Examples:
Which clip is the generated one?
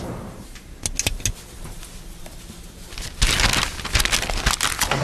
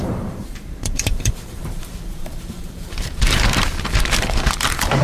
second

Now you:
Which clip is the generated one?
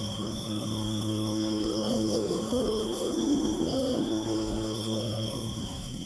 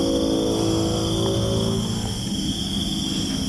first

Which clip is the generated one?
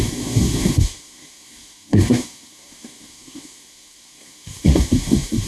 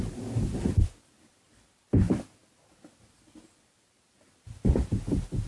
first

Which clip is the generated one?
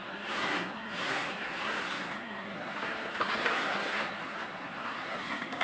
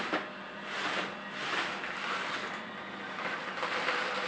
first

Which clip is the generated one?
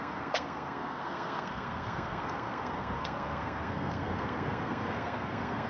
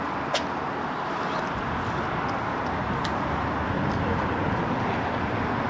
first